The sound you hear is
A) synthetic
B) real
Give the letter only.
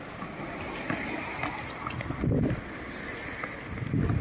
B